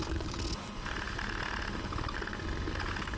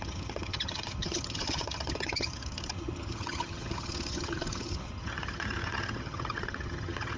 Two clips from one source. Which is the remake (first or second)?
second